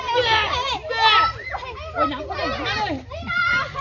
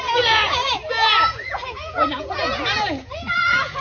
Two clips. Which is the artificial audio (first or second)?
second